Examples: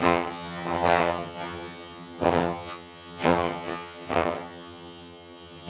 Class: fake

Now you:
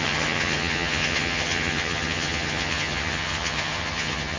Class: fake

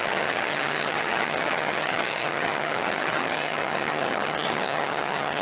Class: fake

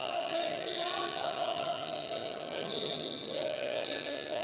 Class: fake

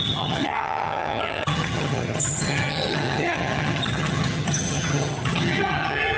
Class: fake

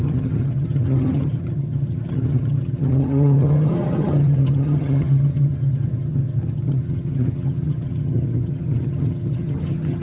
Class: fake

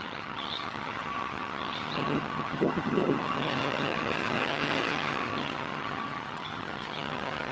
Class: fake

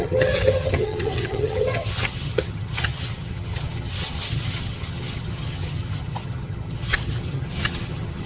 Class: fake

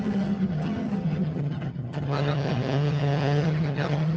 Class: fake